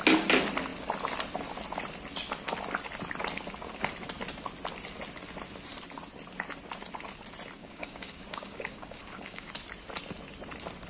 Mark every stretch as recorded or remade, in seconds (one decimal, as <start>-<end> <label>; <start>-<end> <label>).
0.0-7.6 recorded; 7.6-9.5 remade; 9.5-10.9 recorded